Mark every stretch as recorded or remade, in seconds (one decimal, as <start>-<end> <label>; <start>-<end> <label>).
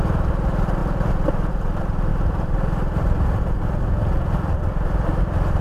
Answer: 0.0-2.1 recorded; 2.1-3.4 remade; 3.4-5.6 recorded